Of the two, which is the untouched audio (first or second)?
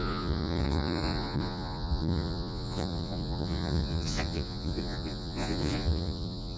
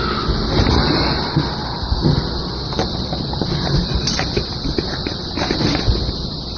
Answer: second